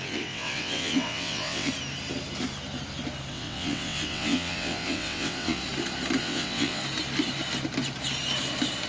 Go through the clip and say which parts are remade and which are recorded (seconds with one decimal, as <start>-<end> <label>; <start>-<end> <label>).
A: 0.0-1.7 remade; 1.7-3.3 recorded; 3.3-5.6 remade; 5.6-6.2 recorded; 6.2-6.8 remade; 6.8-8.9 recorded